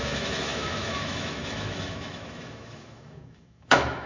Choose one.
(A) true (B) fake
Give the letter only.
B